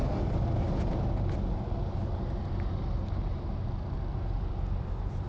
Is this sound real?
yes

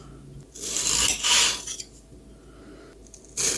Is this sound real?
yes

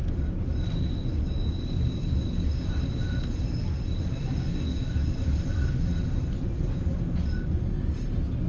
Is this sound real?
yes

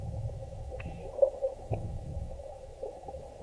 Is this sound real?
no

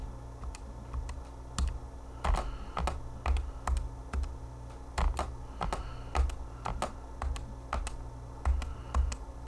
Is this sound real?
yes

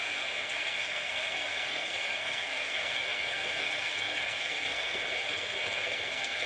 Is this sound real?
no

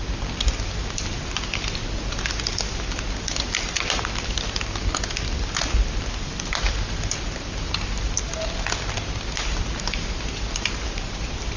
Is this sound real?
yes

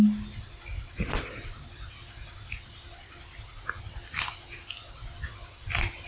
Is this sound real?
yes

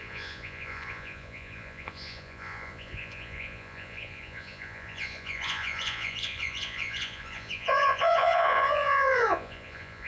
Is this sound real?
no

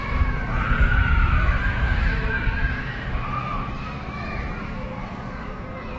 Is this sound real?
no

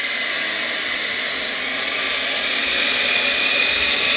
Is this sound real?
yes